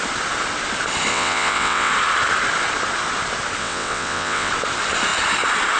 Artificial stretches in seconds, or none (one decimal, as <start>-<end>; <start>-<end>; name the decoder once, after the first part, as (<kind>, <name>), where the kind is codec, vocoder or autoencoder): 1.1-1.9 (vocoder, WaveNeXt); 3.6-4.5